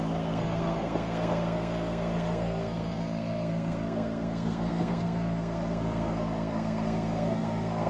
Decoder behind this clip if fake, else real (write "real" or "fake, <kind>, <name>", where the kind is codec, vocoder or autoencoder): fake, codec, SNAC